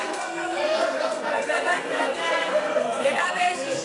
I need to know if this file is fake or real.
fake